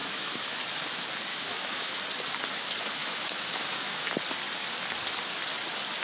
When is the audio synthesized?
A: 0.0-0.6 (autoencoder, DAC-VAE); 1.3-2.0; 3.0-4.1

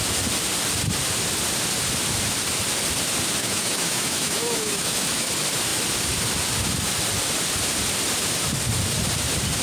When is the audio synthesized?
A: 3.4-5.3 (autoencoder, DAC-VAE)

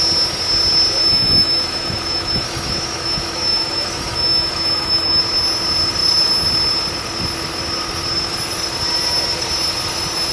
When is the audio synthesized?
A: 1.0-5.2 (autoencoder, DAC-VAE)

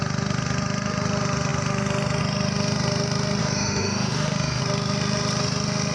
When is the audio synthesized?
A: 3.4-4.6 (autoencoder, DAC-VAE)

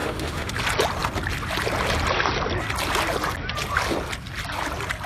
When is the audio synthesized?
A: 0.0-0.5 (autoencoder, DAC-VAE)

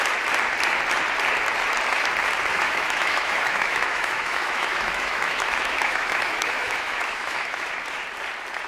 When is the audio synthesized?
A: 2.5-7.7 (autoencoder, DAC-VAE)